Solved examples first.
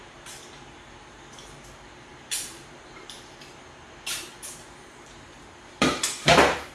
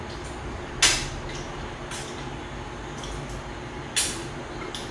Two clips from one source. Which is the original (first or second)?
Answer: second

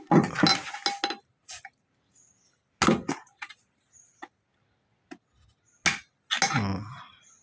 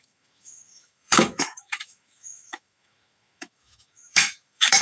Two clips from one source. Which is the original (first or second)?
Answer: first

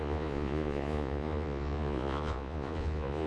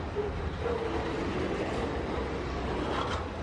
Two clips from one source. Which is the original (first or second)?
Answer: second